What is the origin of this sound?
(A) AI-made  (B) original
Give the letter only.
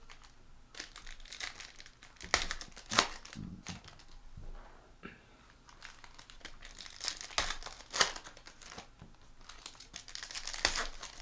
B